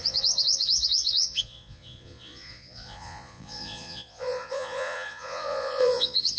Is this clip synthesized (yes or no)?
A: yes